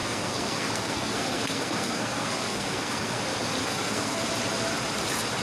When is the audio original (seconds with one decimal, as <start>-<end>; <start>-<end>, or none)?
3.2-3.6; 4.2-5.4